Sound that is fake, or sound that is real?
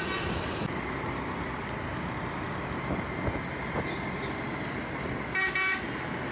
real